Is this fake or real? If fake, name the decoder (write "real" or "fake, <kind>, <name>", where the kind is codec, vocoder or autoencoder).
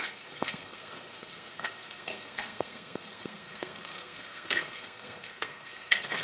fake, codec, SNAC